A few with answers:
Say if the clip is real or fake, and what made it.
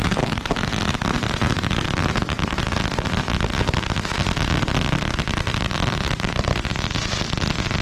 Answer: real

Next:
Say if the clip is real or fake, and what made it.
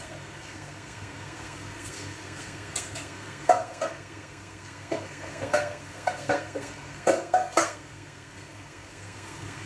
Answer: fake, codec, SNAC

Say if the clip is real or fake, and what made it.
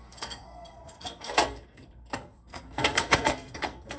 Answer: fake, codec, SNAC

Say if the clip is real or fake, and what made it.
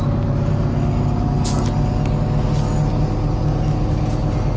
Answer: real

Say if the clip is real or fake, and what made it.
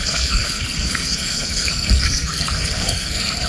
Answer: fake, codec, SNAC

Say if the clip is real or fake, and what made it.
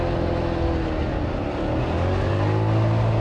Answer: real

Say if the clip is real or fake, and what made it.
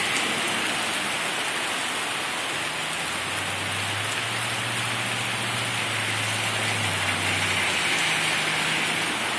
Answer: real